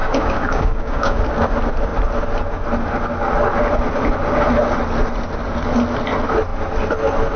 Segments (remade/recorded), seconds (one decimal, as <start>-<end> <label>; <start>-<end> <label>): 0.0-1.2 remade; 1.2-7.4 recorded